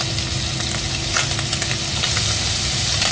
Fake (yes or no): no